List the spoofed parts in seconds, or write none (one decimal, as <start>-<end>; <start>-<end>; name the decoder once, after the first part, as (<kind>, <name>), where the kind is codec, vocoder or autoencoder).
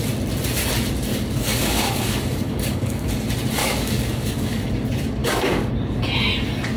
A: 1.1-3.1 (codec, DAC); 3.6-4.7; 5.2-5.7